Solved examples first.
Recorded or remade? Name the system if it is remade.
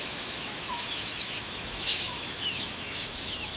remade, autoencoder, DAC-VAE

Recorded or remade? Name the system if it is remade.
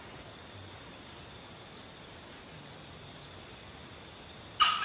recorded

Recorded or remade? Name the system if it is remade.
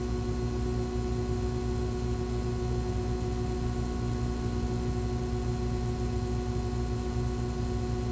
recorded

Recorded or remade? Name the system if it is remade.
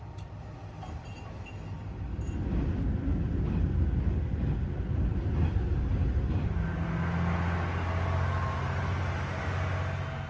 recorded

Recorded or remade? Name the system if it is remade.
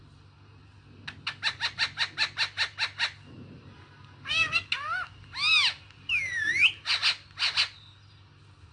recorded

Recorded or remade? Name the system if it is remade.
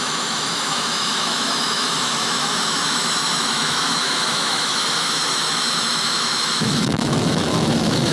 remade, autoencoder, DAC-VAE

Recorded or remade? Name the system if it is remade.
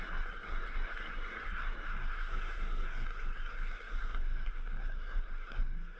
remade, codec, SNAC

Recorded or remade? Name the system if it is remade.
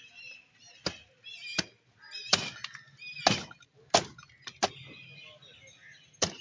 recorded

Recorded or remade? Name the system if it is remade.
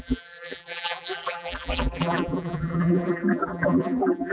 remade, vocoder, BigVGAN v2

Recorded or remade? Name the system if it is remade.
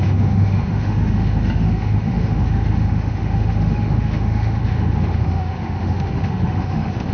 remade, autoencoder, DAC-VAE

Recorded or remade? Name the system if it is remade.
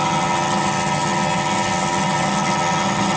remade, vocoder, HiFi-GAN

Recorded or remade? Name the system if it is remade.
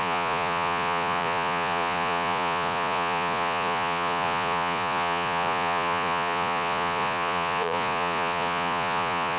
remade, vocoder, Vocos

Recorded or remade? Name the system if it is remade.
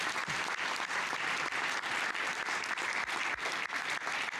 recorded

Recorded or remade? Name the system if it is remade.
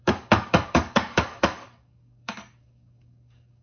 remade, codec, DAC